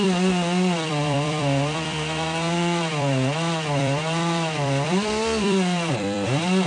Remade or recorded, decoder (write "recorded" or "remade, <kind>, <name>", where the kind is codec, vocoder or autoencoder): remade, vocoder, BigVGAN v2